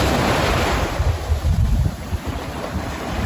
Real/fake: fake